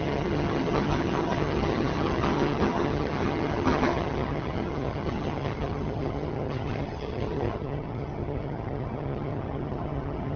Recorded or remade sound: remade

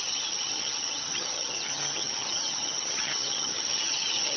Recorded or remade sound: remade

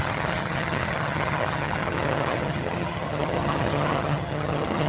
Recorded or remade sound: remade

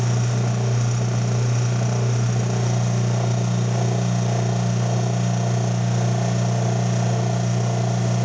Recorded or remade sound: recorded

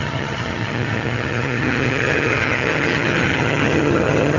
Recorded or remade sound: remade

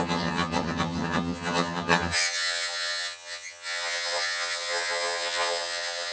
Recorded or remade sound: remade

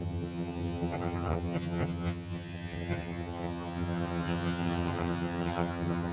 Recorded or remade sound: remade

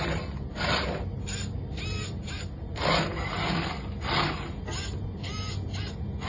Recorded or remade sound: recorded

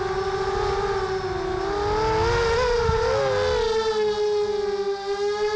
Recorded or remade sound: recorded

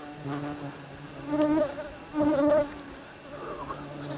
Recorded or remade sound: recorded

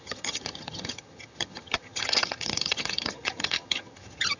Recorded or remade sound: remade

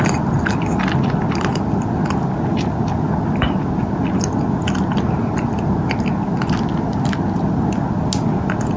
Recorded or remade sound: recorded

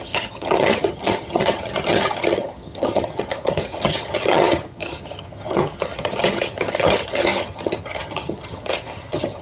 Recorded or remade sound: remade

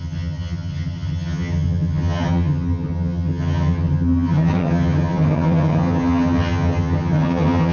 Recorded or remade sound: remade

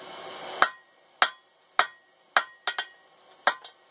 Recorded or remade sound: recorded